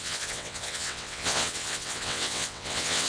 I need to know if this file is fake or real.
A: fake